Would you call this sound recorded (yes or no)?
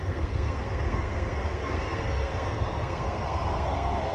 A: no